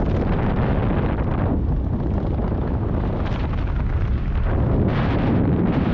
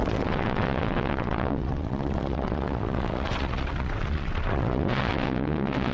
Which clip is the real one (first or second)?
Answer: first